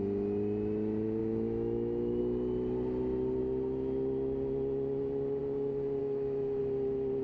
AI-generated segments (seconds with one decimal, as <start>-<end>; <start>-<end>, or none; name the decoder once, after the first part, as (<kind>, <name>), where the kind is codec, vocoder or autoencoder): 1.2-2.2 (autoencoder, DAC-VAE); 6.0-6.6